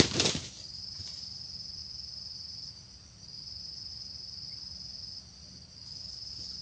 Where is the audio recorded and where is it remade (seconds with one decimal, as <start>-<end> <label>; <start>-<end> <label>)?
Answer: 0.0-6.6 recorded